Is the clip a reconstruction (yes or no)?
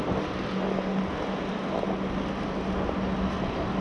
no